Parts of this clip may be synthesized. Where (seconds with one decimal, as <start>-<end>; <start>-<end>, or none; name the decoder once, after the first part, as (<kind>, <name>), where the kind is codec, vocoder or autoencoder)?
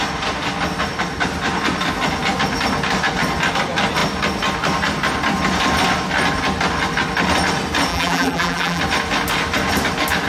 7.9-8.8 (vocoder, BigVGAN v2)